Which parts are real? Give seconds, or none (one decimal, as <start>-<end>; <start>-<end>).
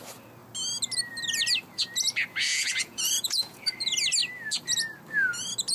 0.0-2.5; 3.6-5.7